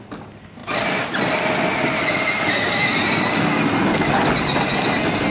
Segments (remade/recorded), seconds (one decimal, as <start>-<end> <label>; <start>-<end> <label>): 0.0-5.3 recorded